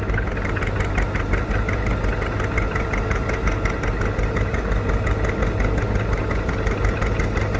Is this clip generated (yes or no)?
no